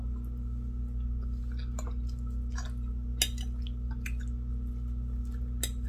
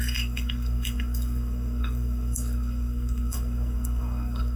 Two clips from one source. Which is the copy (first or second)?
second